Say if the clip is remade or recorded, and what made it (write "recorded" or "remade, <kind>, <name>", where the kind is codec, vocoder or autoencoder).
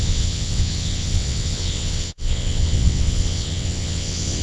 remade, vocoder, WaveNeXt